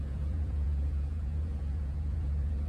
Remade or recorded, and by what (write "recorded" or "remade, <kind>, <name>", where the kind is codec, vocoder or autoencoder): remade, vocoder, Vocos